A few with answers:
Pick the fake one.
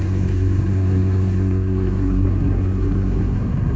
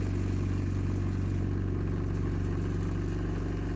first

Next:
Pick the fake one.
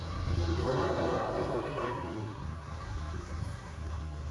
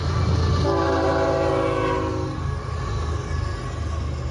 first